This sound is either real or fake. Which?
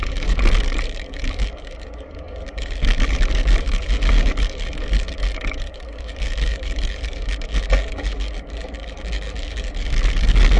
fake